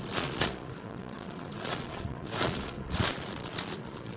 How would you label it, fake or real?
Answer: fake